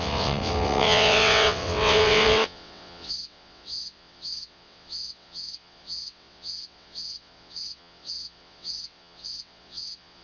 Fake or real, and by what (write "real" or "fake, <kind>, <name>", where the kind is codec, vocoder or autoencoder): fake, vocoder, WaveNeXt